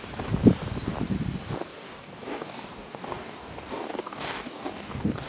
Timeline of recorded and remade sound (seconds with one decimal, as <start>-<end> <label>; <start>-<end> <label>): 0.0-1.7 recorded; 1.7-5.3 remade